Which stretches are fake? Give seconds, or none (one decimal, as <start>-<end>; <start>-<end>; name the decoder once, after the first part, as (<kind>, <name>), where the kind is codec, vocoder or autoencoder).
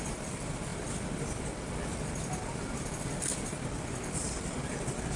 none